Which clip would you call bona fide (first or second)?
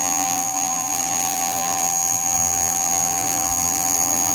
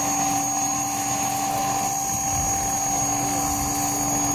second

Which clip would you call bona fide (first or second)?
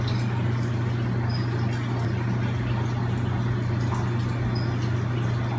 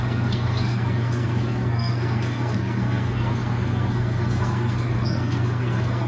first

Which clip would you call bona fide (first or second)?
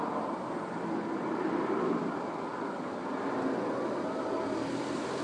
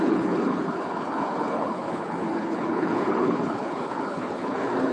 first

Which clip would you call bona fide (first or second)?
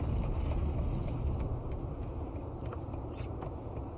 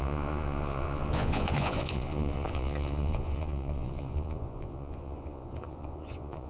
first